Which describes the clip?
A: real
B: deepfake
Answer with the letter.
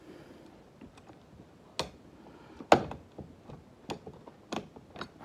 A